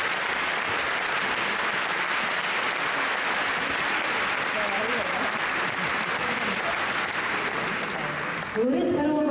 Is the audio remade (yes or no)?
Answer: no